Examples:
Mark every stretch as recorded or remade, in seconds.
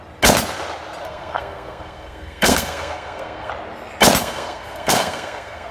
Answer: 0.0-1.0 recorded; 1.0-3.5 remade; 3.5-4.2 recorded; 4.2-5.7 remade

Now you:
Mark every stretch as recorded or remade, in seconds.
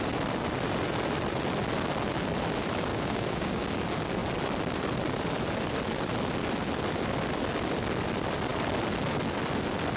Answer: 0.0-2.9 recorded; 2.9-3.7 remade; 3.7-10.0 recorded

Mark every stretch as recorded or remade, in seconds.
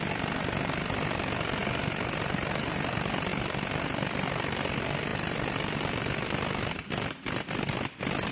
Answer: 0.0-1.6 recorded; 1.6-2.6 remade; 2.6-5.1 recorded; 5.1-8.3 remade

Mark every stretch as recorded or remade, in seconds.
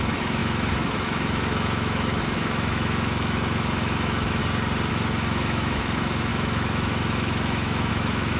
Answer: 0.0-4.4 remade; 4.4-4.9 recorded; 4.9-8.4 remade